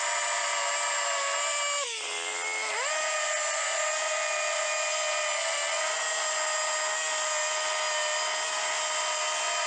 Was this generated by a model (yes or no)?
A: no